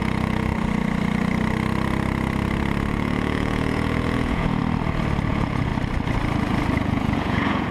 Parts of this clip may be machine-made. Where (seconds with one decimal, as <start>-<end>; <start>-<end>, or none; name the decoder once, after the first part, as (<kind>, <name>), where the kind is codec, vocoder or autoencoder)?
0.0-0.5 (vocoder, Vocos); 2.9-4.6; 5.3-5.7; 6.8-7.7